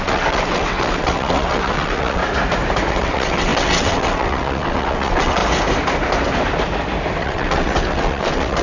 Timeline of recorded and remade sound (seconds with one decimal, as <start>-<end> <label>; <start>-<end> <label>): 0.0-2.2 remade; 2.2-2.9 recorded; 2.9-5.4 remade; 5.4-7.2 recorded; 7.2-8.6 remade